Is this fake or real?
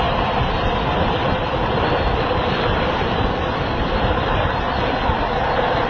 fake